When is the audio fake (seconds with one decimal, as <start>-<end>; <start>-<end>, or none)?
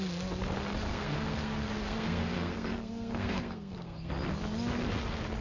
0.9-4.1